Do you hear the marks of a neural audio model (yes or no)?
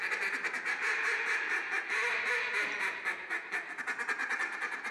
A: no